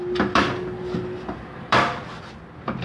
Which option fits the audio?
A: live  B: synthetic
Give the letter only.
B